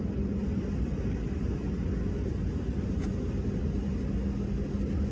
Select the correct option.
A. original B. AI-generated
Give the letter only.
A